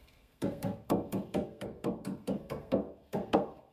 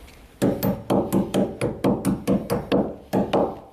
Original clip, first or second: second